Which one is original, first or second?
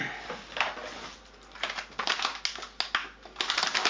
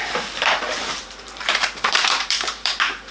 first